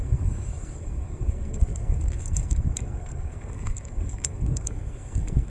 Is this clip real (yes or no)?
no